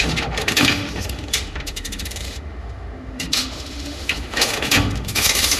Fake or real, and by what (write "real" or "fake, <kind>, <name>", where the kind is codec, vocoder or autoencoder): fake, autoencoder, DAC-VAE